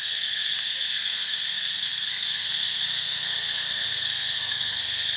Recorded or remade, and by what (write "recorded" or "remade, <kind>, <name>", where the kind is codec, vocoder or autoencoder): remade, codec, SNAC